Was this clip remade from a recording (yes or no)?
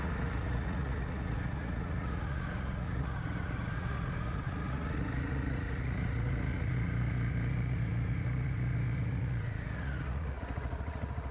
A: yes